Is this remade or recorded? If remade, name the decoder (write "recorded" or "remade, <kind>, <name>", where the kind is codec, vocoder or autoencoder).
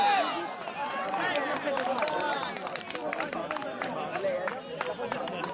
recorded